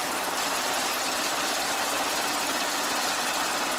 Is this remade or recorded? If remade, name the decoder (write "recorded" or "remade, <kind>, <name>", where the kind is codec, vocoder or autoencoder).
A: remade, vocoder, BigVGAN v2